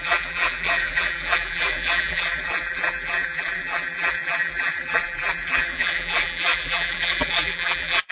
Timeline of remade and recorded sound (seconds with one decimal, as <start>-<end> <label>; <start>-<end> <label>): 0.0-8.1 remade